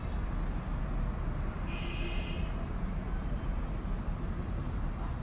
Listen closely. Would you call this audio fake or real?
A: real